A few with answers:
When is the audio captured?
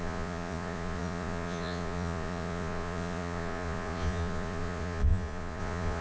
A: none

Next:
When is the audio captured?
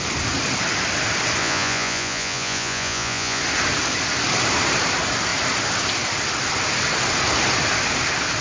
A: 0.0-1.4; 3.4-8.4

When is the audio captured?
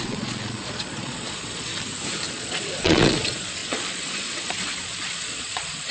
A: 1.7-2.3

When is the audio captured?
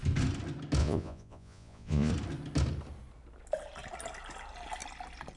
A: 0.0-0.8; 2.1-5.4